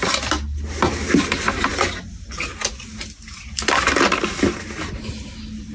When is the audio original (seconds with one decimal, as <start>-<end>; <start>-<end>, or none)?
0.0-5.7